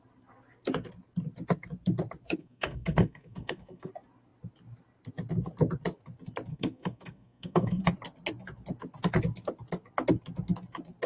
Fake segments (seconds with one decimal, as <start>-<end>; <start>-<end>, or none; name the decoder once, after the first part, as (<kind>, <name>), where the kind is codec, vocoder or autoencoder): 2.4-3.9 (codec, SNAC); 6.5-7.8